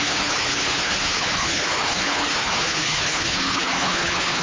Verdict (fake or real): fake